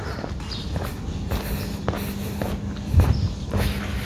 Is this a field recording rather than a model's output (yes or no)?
yes